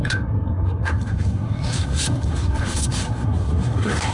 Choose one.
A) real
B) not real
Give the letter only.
B